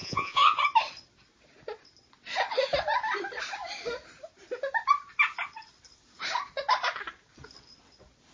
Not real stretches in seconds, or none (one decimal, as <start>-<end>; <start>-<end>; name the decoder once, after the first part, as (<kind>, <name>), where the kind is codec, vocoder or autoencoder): 0.0-0.6 (vocoder, Vocos)